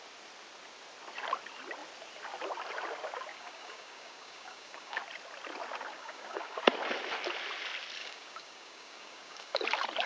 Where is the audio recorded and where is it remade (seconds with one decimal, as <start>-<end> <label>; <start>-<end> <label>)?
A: 0.0-3.3 recorded; 3.3-5.0 remade; 5.0-5.9 recorded; 5.9-6.6 remade; 6.6-8.0 recorded; 8.0-9.6 remade; 9.6-10.1 recorded